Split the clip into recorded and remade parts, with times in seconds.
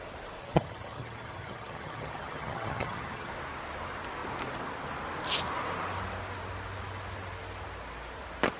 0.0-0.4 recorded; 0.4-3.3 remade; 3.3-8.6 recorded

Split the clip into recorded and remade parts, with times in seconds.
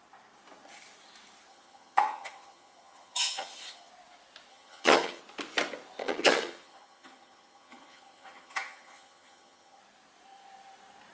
0.0-1.5 recorded; 1.5-3.9 remade; 3.9-4.5 recorded; 4.5-5.2 remade; 5.2-6.0 recorded; 6.0-9.8 remade; 9.8-11.1 recorded